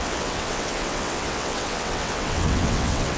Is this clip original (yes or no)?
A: no